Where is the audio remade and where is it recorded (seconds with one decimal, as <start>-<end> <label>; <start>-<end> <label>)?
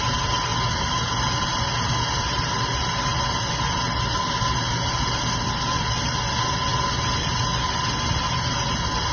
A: 0.0-9.1 recorded